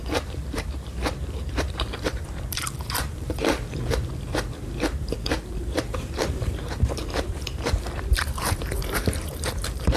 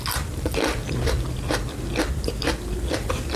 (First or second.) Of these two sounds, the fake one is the first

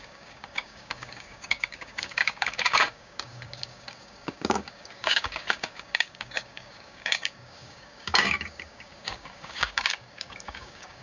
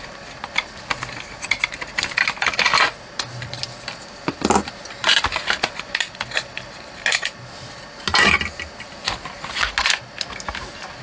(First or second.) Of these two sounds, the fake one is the first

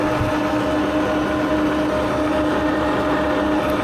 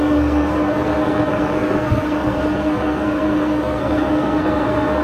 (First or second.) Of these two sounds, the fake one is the second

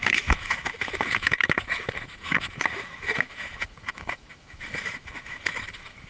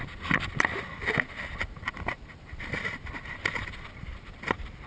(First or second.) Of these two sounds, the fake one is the first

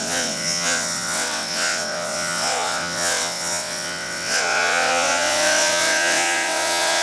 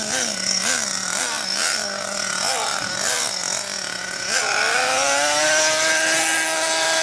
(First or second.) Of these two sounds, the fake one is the first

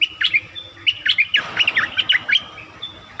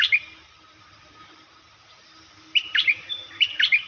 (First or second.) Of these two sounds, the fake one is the second